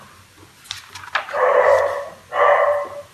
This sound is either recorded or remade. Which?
recorded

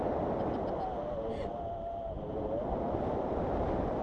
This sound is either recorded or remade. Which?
recorded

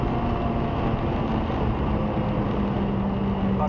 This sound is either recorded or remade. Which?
recorded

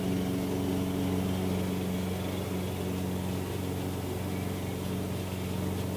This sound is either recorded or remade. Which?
recorded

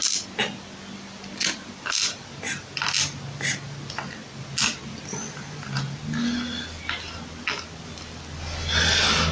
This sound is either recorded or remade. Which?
recorded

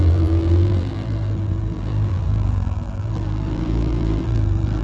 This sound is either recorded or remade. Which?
remade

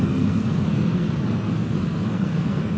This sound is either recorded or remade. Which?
remade